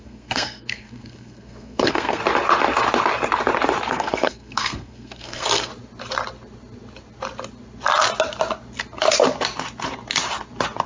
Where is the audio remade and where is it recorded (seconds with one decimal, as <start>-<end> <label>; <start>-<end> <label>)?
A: 0.0-2.2 remade; 2.2-3.9 recorded; 3.9-5.7 remade; 5.7-10.9 recorded